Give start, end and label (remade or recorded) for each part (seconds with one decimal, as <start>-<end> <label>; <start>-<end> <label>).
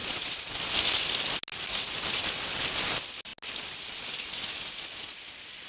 0.0-0.5 remade; 0.5-5.7 recorded